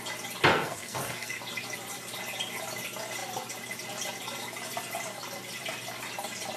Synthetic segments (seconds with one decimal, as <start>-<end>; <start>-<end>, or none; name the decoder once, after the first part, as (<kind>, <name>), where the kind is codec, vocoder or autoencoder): 0.5-1.4 (codec, SNAC)